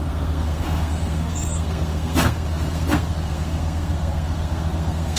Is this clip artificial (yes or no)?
yes